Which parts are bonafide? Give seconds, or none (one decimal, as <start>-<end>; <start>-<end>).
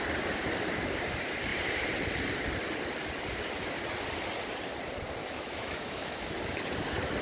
0.0-5.2; 6.3-7.2